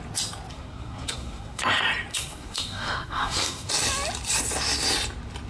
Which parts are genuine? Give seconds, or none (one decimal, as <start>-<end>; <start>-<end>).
0.0-0.5; 1.6-2.1; 3.7-5.5